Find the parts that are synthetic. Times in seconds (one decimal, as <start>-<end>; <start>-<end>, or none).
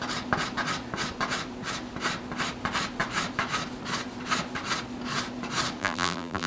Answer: 5.8-6.5